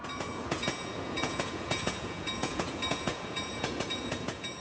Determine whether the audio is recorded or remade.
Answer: remade